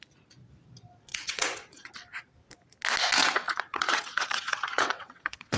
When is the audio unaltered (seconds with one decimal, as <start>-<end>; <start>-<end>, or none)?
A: 0.0-1.1; 1.9-3.2